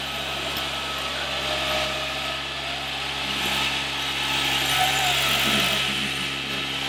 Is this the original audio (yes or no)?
yes